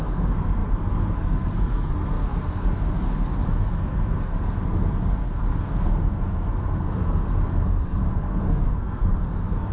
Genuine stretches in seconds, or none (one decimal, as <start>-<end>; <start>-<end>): none

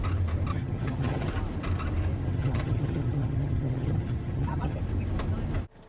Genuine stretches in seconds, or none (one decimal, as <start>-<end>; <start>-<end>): 0.0-0.5; 1.3-2.2; 4.8-5.9